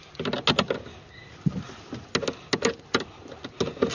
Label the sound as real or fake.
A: real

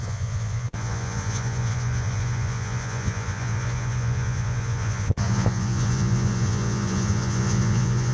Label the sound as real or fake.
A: fake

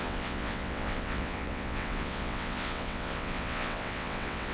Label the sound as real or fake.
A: fake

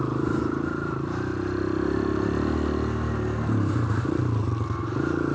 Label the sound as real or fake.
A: real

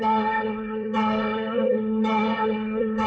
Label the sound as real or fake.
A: fake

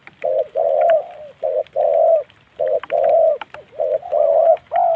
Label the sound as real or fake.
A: real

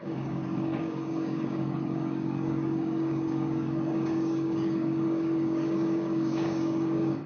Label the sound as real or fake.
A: fake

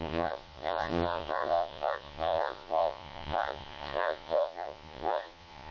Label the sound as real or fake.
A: fake